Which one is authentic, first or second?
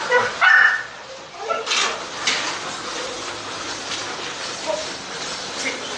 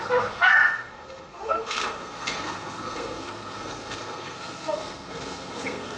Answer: first